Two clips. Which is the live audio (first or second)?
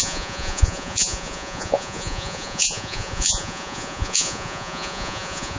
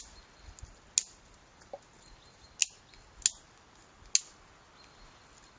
second